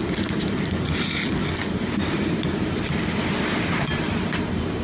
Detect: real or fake real